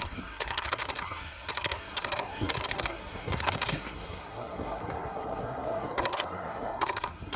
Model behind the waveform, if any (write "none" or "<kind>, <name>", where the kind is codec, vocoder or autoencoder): codec, SNAC